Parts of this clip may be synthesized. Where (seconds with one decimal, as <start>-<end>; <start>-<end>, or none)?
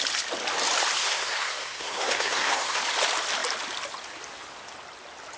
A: 1.0-2.8